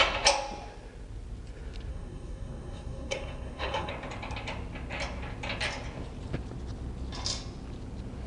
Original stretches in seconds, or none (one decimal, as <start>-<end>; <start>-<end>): 0.0-1.9; 3.9-8.3